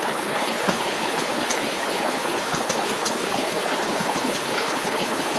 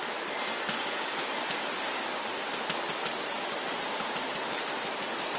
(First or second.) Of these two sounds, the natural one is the second